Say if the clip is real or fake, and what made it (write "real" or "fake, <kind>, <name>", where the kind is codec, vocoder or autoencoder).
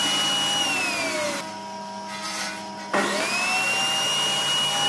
real